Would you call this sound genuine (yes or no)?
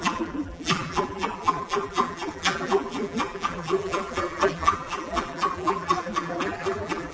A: no